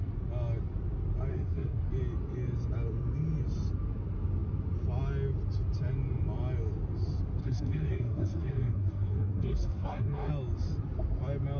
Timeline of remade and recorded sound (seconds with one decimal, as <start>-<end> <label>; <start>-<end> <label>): 0.0-1.3 recorded; 1.3-1.9 remade; 1.9-7.4 recorded; 7.4-10.3 remade; 10.3-11.6 recorded